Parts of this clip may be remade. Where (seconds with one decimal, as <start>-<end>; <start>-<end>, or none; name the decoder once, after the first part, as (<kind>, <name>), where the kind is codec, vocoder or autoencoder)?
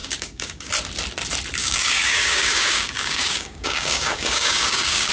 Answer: 0.0-0.7 (codec, DAC); 1.6-5.1